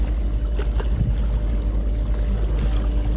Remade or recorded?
recorded